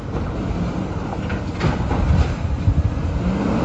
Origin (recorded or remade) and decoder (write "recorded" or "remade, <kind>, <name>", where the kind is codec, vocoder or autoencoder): recorded